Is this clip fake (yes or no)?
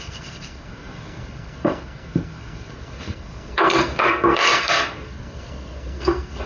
yes